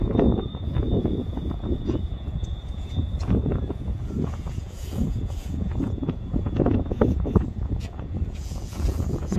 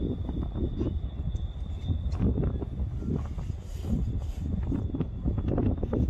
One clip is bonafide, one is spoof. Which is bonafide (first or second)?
second